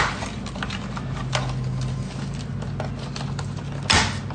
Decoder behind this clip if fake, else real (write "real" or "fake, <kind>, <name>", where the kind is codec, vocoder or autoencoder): real